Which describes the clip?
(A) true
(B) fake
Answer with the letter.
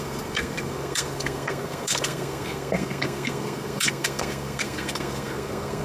B